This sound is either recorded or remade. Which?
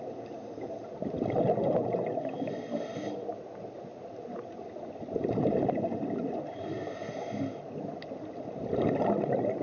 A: recorded